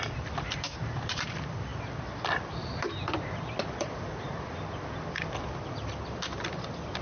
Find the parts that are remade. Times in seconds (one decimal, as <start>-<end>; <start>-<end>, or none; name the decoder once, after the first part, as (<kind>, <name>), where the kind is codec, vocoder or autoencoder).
0.0-7.0 (vocoder, BigVGAN v2)